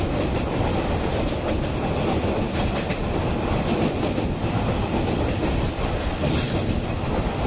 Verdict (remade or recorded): recorded